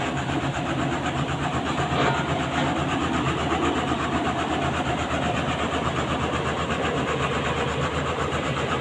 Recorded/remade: remade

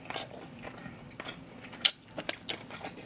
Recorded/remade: remade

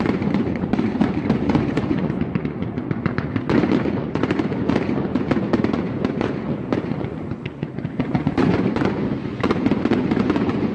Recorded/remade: remade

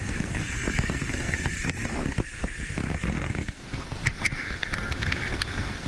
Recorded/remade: remade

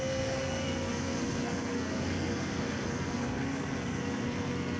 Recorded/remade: remade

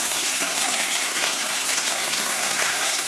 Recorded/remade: remade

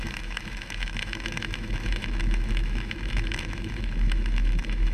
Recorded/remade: remade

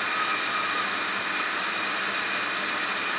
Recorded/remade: recorded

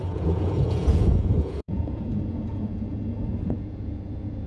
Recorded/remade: remade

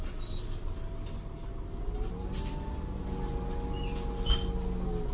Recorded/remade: recorded